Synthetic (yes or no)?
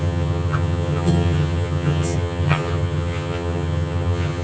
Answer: yes